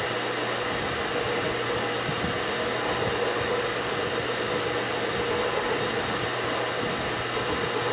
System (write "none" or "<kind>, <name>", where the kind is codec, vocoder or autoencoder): none